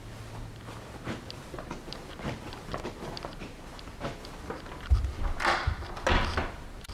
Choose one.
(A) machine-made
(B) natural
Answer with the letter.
B